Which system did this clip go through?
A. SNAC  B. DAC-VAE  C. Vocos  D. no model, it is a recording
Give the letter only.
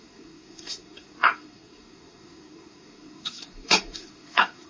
A